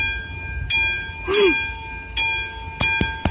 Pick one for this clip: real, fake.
real